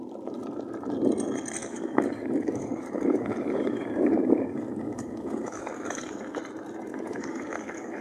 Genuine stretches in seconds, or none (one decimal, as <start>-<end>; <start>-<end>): 0.0-1.6; 6.4-6.9